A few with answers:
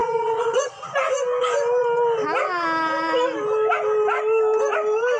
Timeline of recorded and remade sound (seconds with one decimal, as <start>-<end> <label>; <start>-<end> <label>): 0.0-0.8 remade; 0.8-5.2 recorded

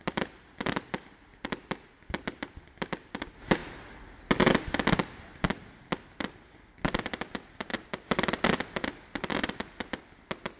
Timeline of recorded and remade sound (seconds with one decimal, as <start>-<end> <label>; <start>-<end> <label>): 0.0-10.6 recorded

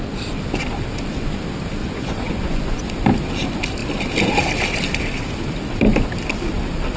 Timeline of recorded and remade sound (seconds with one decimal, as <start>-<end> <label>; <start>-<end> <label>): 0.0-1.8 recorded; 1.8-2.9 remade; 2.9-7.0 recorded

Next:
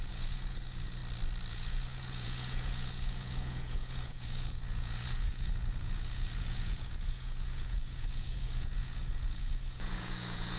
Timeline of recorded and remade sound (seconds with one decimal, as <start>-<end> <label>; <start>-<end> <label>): 0.0-1.0 remade; 1.0-1.5 recorded; 1.5-10.6 remade

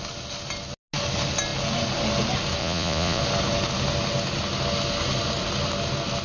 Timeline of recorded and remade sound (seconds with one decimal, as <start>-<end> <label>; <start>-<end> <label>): 0.0-2.6 recorded; 2.6-3.2 remade; 3.2-6.2 recorded

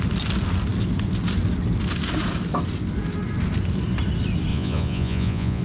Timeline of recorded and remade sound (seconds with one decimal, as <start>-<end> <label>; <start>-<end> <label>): 0.0-4.5 recorded; 4.5-5.6 remade

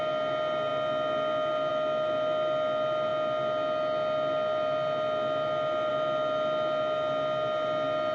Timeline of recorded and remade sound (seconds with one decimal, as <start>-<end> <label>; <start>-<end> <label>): 0.0-8.1 recorded